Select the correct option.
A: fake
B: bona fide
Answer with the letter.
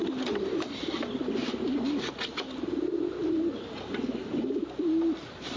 B